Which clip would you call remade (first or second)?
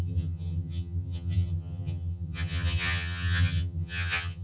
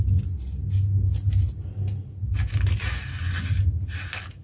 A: first